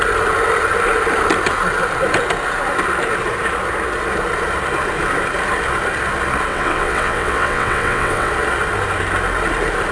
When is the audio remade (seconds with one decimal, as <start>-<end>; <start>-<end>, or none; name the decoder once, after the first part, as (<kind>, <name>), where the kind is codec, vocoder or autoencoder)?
6.5-8.3 (vocoder, WaveNeXt)